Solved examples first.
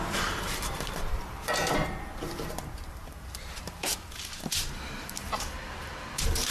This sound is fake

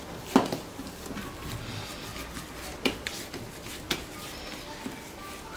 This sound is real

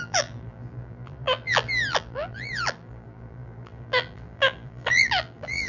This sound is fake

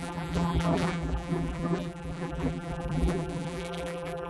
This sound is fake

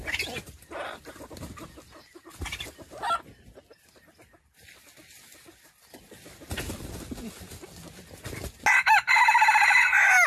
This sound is real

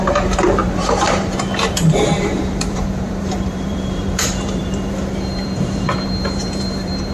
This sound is fake